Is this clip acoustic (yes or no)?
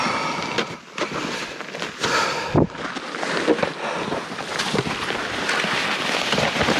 yes